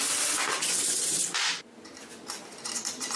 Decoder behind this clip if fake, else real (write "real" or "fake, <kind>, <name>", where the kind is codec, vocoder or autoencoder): real